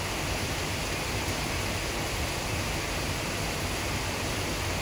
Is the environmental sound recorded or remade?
recorded